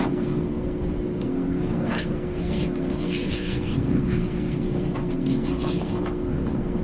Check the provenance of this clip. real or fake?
fake